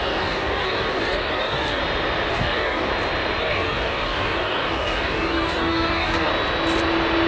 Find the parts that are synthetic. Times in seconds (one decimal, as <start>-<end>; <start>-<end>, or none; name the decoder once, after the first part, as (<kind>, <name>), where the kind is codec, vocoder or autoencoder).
0.0-1.8 (codec, DAC); 2.3-2.9; 3.4-6.3